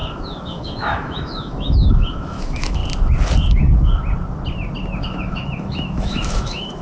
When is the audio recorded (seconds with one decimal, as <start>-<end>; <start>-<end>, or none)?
2.8-5.0